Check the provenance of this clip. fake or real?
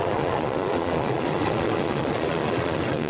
fake